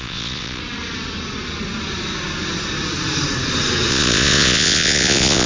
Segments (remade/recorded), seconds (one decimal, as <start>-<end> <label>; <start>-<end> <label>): 0.0-0.6 remade; 0.6-3.9 recorded; 3.9-5.5 remade